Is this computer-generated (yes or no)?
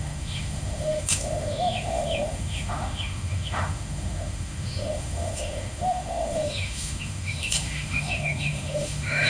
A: yes